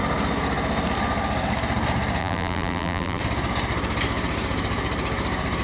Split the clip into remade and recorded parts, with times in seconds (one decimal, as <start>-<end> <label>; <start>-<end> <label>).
0.0-2.2 recorded; 2.2-3.2 remade; 3.2-5.6 recorded